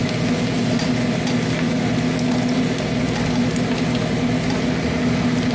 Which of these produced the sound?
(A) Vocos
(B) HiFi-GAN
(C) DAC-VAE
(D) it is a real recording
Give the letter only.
D